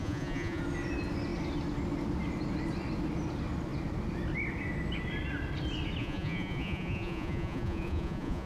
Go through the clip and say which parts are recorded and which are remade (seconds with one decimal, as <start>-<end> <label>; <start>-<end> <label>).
0.0-0.6 remade; 0.6-6.0 recorded; 6.0-8.5 remade